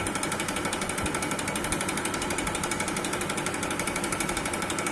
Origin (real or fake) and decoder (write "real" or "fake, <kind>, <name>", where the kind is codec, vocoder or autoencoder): fake, vocoder, BigVGAN v2